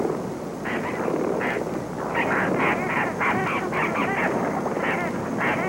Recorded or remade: recorded